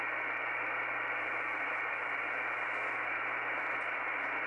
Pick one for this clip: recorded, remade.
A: recorded